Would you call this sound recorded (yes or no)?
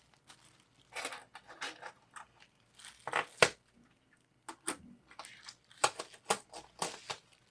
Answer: yes